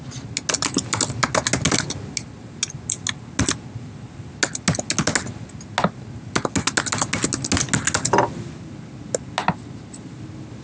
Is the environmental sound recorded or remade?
recorded